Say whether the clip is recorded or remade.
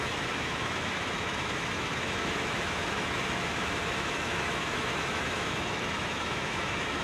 remade